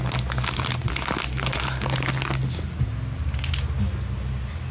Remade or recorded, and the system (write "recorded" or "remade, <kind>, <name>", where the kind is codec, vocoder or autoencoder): recorded